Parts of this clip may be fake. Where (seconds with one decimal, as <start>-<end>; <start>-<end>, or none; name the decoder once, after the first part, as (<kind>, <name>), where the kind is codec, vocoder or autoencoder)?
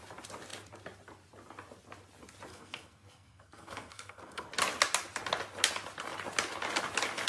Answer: 2.5-4.5 (codec, SNAC)